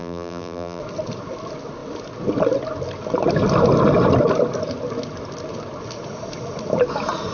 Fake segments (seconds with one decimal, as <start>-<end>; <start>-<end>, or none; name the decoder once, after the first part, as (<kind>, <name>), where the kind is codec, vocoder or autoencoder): 0.0-0.8 (vocoder, BigVGAN v2)